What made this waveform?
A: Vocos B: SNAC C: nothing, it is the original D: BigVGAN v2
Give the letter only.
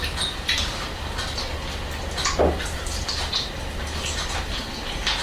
C